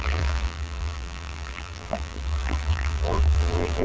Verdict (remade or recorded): remade